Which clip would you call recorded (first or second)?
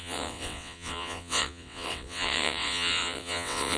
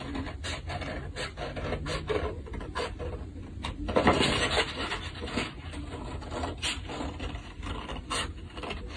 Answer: second